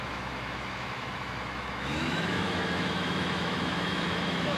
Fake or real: fake